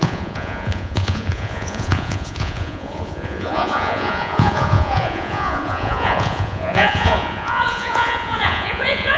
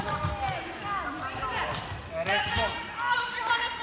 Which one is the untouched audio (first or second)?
second